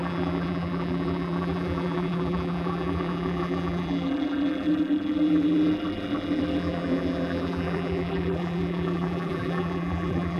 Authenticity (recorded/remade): remade